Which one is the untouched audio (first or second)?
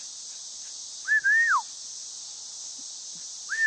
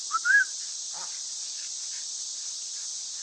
first